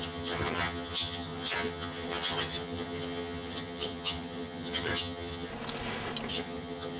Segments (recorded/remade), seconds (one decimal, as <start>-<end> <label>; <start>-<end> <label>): 0.0-5.5 remade; 5.5-6.3 recorded; 6.3-7.0 remade